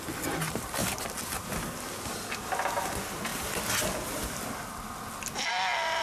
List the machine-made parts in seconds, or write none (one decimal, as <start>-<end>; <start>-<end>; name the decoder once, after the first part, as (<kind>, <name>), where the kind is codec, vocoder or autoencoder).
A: none